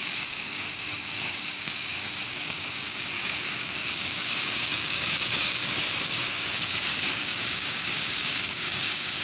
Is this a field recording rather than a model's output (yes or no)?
no